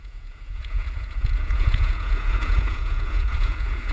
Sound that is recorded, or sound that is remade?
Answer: remade